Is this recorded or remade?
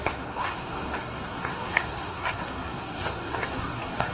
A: remade